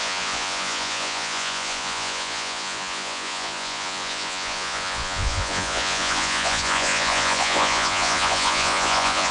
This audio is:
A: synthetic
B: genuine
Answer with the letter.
A